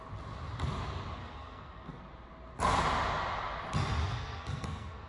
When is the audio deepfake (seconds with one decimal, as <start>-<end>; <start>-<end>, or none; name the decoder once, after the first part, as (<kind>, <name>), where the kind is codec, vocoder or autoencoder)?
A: 1.2-2.0 (codec, SNAC); 4.0-5.1